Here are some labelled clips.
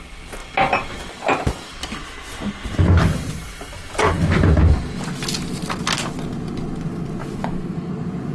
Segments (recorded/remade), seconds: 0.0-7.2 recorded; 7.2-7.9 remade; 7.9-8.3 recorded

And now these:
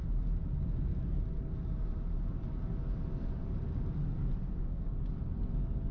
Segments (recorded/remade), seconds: 0.0-5.9 recorded

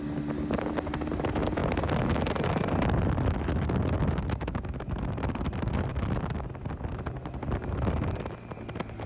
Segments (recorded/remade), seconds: 0.0-9.1 recorded

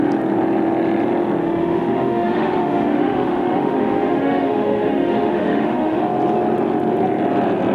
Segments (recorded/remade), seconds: 0.0-1.4 recorded; 1.4-6.0 remade; 6.0-7.7 recorded

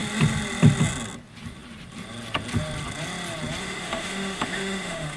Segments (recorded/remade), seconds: 0.0-3.6 recorded; 3.6-5.2 remade